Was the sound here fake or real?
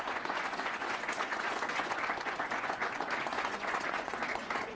fake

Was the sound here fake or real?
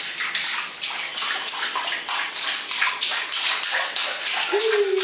real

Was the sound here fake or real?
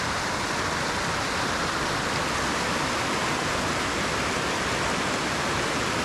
real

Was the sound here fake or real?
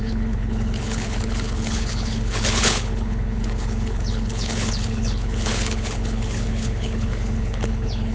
fake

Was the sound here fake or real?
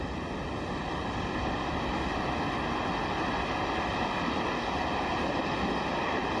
real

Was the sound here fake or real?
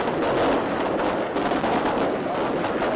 real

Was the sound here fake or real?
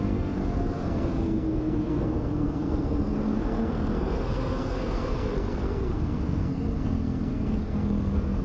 fake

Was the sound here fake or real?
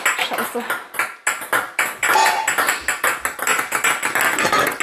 real